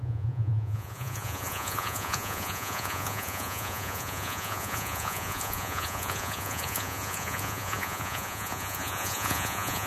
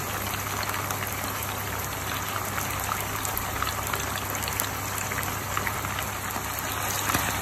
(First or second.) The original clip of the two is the second